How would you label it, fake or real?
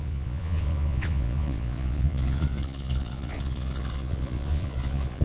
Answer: fake